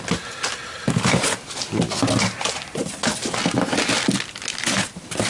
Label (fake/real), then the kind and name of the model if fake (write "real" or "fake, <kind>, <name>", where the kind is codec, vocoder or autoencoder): real